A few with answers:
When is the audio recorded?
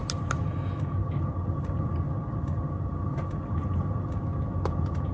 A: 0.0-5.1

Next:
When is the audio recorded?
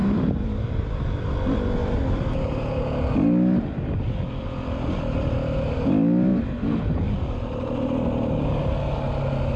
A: 0.9-6.3; 7.0-9.6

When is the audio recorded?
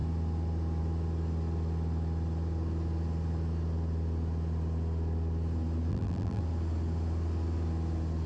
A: 0.0-5.9; 6.4-8.3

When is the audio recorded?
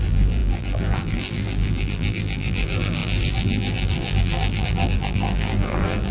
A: none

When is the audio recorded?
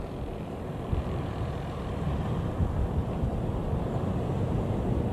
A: 0.0-0.9; 2.2-5.1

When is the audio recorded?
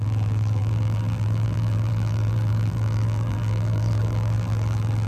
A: none